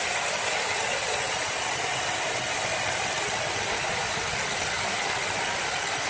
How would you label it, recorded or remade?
recorded